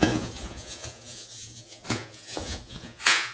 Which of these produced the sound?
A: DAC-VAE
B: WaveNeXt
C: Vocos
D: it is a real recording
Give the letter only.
C